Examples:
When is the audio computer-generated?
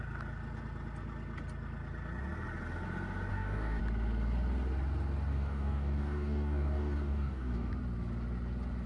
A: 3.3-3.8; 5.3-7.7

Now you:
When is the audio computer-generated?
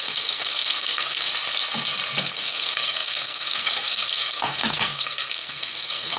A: 0.0-1.3; 2.2-6.2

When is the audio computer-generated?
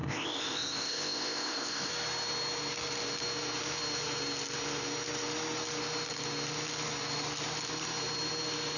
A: 0.0-1.9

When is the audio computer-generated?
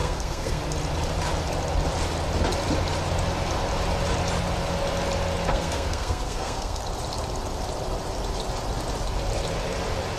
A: 0.0-0.6; 5.5-6.8